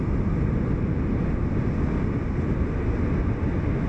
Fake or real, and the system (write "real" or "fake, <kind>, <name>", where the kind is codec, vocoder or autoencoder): real